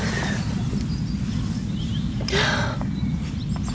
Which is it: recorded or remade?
recorded